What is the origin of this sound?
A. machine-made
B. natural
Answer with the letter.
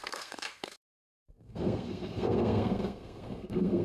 A